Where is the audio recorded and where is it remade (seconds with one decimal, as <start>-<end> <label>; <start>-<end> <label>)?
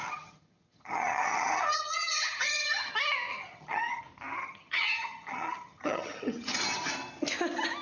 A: 0.0-2.9 remade; 2.9-3.3 recorded; 3.3-4.0 remade; 4.0-4.4 recorded; 4.4-6.9 remade; 6.9-7.8 recorded